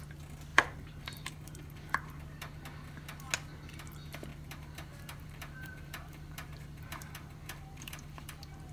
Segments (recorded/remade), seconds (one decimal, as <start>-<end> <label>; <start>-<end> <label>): 0.0-0.5 recorded; 0.5-2.2 remade; 2.2-4.3 recorded; 4.3-8.7 remade